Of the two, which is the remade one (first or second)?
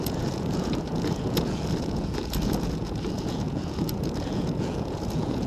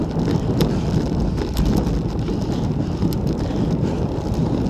first